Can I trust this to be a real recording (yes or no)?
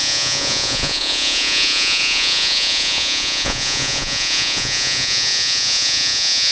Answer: no